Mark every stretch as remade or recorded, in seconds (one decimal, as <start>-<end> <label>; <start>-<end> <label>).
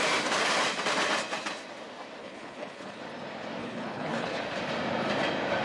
0.0-2.2 recorded; 2.2-3.0 remade; 3.0-3.6 recorded; 3.6-4.4 remade; 4.4-5.6 recorded